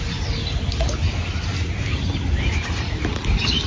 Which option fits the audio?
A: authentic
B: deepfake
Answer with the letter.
A